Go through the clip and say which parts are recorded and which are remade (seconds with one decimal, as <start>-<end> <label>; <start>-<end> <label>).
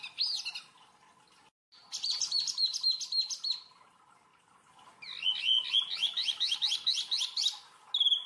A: 0.0-6.0 recorded; 6.0-6.6 remade; 6.6-8.3 recorded